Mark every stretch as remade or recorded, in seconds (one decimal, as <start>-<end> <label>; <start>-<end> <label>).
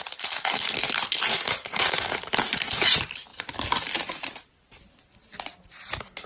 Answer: 0.0-1.3 recorded; 1.3-2.1 remade; 2.1-6.3 recorded